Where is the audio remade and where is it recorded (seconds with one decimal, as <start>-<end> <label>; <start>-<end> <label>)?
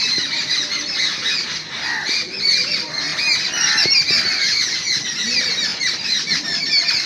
0.0-0.7 remade; 0.7-5.7 recorded; 5.7-6.3 remade; 6.3-7.1 recorded